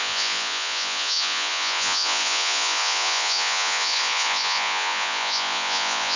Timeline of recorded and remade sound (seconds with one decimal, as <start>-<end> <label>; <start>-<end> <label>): 0.0-6.2 remade